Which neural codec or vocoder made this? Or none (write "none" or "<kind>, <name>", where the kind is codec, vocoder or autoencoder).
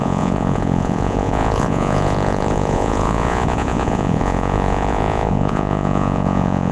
vocoder, Vocos